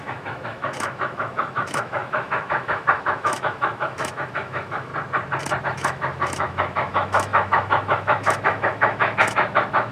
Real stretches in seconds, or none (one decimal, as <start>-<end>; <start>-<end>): 4.9-5.6